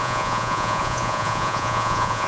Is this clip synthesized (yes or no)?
yes